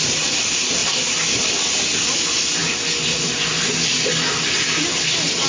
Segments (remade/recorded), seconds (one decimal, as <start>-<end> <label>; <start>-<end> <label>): 0.0-5.5 recorded